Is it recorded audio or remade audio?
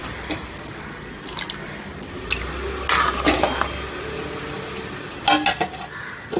recorded